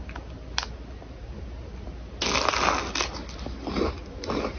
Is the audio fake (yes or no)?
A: no